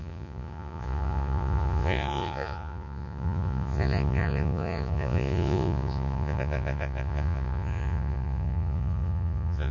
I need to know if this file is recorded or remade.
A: remade